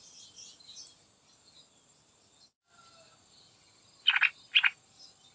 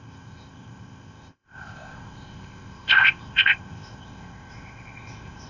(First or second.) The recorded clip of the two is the first